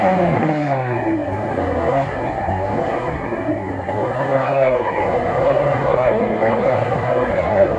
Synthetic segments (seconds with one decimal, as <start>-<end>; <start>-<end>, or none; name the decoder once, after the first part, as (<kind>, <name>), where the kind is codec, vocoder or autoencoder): 0.0-7.8 (codec, SNAC)